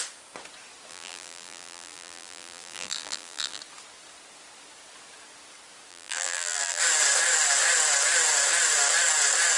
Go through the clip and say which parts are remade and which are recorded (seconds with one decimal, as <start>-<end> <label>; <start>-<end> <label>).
0.0-0.9 recorded; 0.9-3.6 remade; 3.6-5.9 recorded; 5.9-6.8 remade; 6.8-9.6 recorded